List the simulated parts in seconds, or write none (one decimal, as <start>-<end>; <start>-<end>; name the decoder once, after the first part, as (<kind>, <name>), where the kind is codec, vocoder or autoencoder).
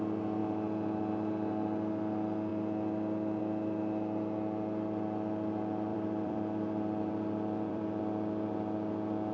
5.9-8.0 (vocoder, BigVGAN v2)